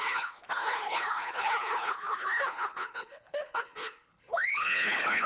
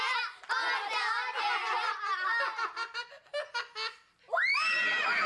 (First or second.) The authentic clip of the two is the second